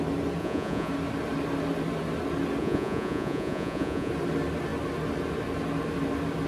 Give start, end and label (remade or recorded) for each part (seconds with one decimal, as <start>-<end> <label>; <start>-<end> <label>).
0.0-0.4 recorded; 0.4-0.9 remade; 0.9-2.6 recorded; 2.6-4.1 remade; 4.1-6.5 recorded

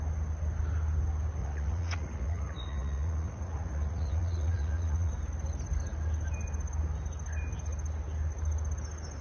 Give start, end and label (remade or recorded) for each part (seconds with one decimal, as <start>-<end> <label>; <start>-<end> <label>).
0.0-1.4 recorded; 1.4-5.1 remade; 5.1-9.2 recorded

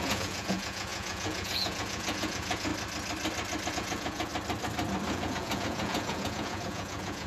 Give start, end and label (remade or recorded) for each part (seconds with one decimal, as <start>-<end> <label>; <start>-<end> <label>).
0.0-2.7 remade; 2.7-3.7 recorded; 3.7-4.3 remade; 4.3-5.1 recorded; 5.1-7.3 remade

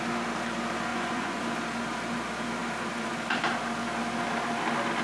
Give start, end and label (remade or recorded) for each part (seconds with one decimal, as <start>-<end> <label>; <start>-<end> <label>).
0.0-0.9 recorded; 0.9-1.4 remade; 1.4-5.0 recorded